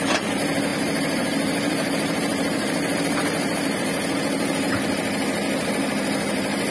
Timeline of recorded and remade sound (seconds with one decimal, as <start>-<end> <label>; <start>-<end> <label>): 0.0-0.7 recorded; 0.7-4.7 remade; 4.7-6.7 recorded